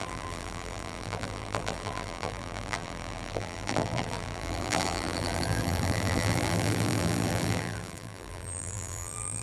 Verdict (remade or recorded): remade